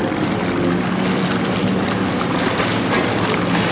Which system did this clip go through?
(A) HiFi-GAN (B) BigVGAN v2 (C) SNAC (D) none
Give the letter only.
D